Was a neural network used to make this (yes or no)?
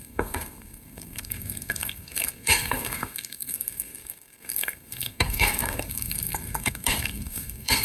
yes